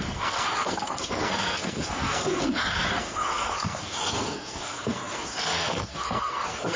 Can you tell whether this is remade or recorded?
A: remade